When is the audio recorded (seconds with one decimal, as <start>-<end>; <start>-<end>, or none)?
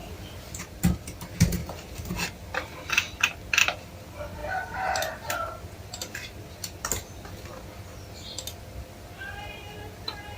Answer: 0.6-1.6; 2.1-4.4; 5.3-10.4